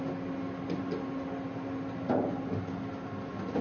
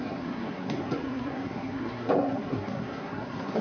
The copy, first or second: second